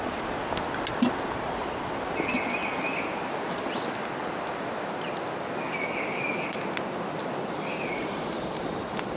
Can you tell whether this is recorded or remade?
recorded